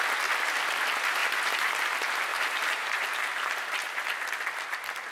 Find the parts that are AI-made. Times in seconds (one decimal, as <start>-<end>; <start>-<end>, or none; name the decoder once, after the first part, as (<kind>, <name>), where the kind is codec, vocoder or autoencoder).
1.2-1.7 (vocoder, BigVGAN v2); 2.3-4.2